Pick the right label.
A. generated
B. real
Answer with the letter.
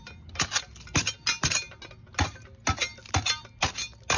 B